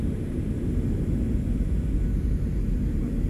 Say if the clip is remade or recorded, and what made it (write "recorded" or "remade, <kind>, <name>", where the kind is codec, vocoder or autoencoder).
recorded